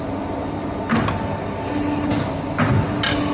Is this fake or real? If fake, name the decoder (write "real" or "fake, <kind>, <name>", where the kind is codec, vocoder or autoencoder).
real